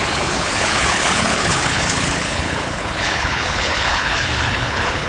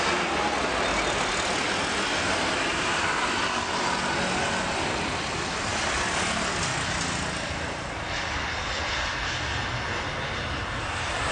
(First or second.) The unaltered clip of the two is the second